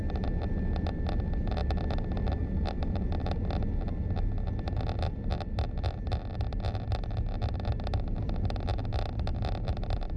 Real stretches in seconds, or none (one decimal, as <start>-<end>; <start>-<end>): 0.0-1.6; 3.1-9.3